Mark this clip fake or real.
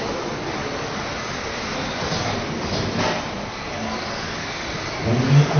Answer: real